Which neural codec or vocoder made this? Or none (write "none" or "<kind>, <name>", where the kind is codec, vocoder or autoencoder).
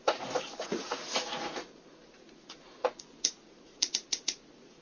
vocoder, Vocos